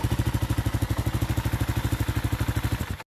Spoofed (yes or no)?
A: no